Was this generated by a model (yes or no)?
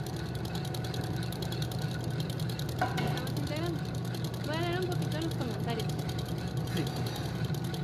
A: no